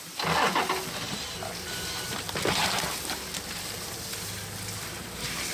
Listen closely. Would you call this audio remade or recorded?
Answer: recorded